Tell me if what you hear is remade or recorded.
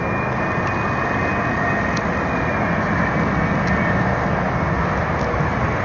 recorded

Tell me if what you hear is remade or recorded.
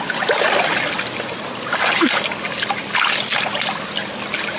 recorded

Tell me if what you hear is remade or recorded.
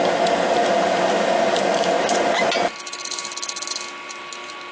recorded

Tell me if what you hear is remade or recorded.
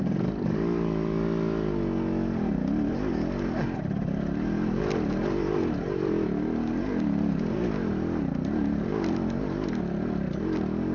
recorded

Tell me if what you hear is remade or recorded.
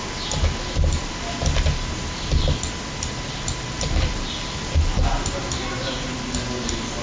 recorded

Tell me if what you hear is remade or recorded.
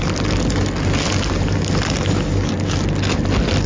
recorded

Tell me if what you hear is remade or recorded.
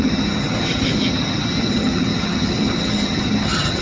remade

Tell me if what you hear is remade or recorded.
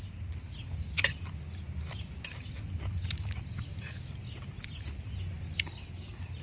recorded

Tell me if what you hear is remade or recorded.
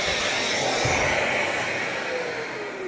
recorded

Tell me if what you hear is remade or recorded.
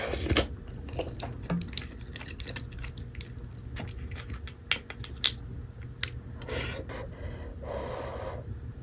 recorded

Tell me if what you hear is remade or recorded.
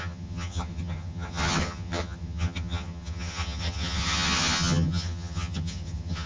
remade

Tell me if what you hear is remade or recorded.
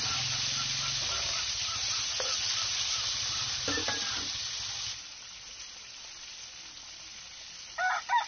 recorded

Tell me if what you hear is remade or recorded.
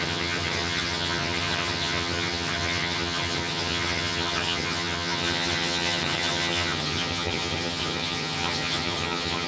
remade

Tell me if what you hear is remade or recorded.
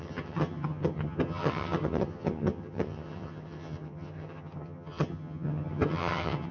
remade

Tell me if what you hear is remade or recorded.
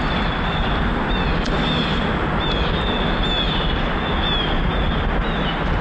recorded